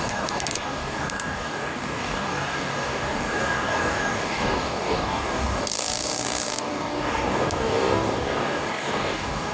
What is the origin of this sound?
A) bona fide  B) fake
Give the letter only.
B